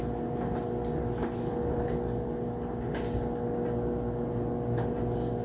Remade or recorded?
recorded